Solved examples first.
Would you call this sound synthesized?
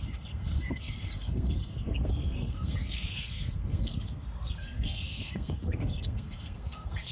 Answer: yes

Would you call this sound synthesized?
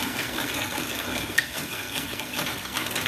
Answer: yes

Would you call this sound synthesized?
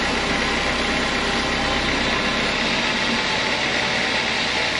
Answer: no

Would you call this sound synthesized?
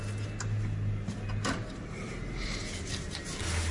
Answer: no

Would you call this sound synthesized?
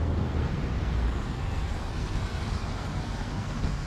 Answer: yes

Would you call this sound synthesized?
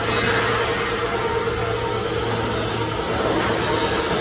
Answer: no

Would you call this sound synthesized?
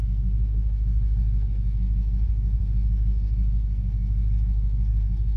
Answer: yes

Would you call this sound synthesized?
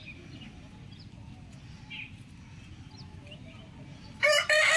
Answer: no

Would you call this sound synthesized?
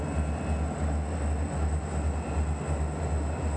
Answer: no